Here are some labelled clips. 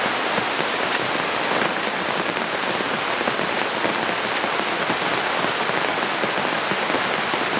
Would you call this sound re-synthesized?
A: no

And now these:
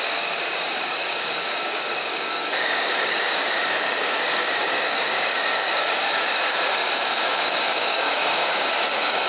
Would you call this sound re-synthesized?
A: yes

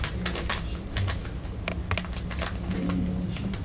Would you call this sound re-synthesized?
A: no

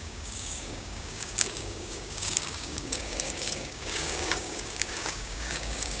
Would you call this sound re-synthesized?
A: yes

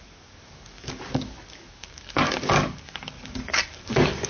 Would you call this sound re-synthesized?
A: yes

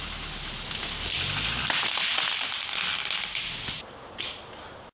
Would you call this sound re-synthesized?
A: no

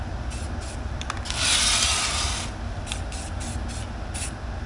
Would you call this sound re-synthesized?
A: no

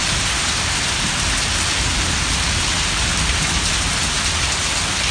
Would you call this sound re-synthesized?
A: no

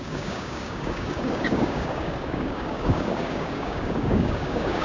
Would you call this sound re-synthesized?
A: yes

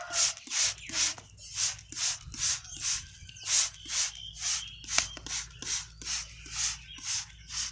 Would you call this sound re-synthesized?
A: no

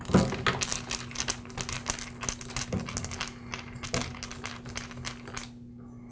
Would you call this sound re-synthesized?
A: no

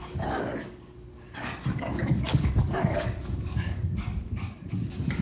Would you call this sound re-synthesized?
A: yes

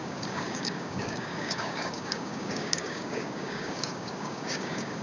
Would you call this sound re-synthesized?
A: yes